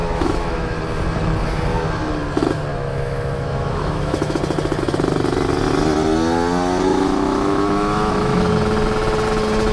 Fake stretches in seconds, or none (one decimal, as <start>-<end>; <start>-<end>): 0.0-0.8; 2.7-4.4; 6.9-8.5